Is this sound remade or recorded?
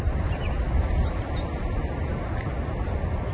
recorded